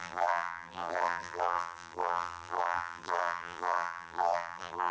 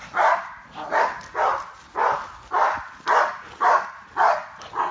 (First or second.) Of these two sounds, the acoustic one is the second